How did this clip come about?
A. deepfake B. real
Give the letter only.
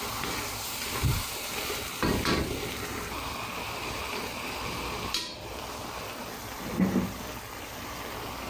B